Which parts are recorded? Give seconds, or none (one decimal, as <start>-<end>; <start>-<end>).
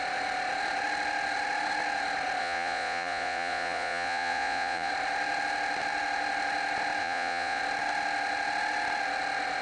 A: 0.0-2.4; 4.9-7.0; 7.6-9.6